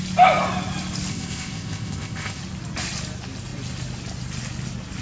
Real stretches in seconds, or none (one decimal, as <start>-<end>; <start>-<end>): 0.0-1.1; 2.4-5.0